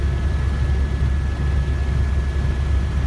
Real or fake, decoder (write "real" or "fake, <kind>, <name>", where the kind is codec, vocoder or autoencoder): real